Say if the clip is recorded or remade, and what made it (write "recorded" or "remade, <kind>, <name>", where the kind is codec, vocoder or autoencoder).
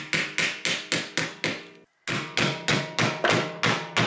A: recorded